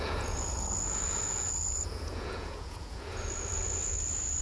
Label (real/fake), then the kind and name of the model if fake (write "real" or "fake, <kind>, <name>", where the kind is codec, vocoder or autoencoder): fake, vocoder, Vocos